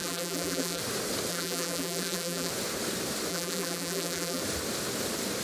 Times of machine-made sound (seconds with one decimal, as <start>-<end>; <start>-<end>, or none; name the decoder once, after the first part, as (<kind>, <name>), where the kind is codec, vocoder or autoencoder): 0.0-0.8 (vocoder, BigVGAN v2); 1.3-2.5; 3.3-4.4